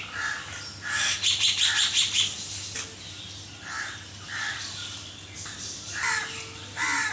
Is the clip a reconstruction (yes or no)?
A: yes